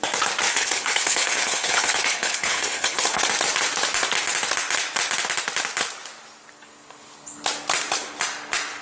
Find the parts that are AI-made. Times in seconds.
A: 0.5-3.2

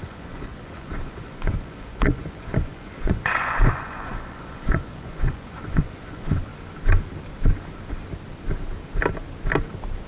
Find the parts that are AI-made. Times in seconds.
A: 0.0-6.5

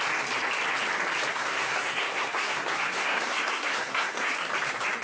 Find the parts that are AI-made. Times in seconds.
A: 1.3-4.3

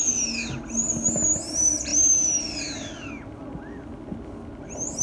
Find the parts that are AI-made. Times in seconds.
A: none

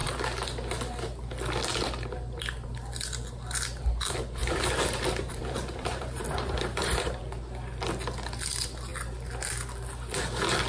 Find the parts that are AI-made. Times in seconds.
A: 4.4-7.2

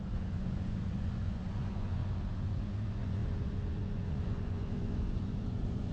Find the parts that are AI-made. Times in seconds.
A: 0.0-2.0; 2.5-5.9

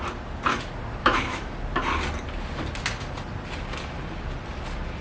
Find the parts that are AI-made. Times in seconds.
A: 1.0-1.5